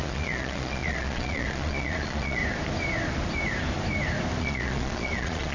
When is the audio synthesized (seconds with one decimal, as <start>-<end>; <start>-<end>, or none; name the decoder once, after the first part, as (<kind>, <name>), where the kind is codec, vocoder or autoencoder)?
0.0-2.4 (vocoder, Vocos); 4.4-5.5